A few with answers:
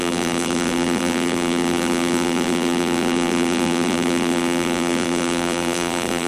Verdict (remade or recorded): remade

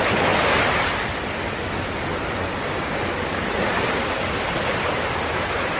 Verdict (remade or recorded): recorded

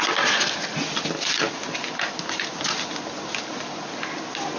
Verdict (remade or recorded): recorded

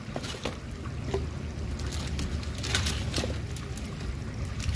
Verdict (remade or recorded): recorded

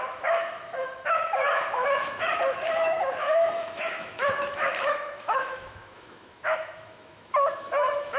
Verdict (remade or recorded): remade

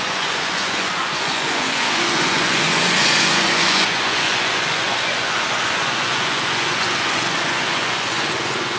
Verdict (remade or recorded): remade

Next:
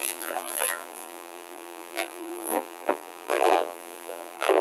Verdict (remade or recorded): remade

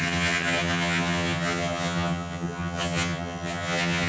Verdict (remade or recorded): remade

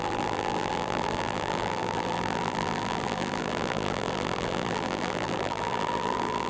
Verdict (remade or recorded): remade